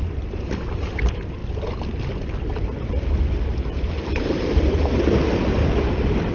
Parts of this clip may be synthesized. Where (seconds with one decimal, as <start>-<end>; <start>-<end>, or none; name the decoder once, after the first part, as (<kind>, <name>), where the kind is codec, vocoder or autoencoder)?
none